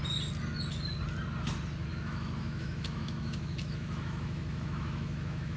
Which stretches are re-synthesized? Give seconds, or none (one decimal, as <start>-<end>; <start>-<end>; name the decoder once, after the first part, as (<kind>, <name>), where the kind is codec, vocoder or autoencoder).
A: 1.9-5.6 (autoencoder, DAC-VAE)